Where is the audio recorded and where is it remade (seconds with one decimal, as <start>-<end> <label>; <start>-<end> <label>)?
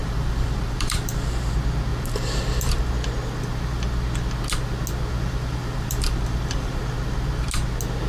0.0-1.5 remade; 1.5-1.9 recorded; 1.9-2.9 remade; 2.9-5.1 recorded; 5.1-6.8 remade; 6.8-8.1 recorded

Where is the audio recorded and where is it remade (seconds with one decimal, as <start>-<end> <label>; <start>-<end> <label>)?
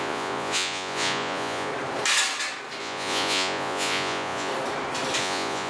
0.0-1.7 remade; 1.7-2.8 recorded; 2.8-4.5 remade; 4.5-5.2 recorded; 5.2-5.7 remade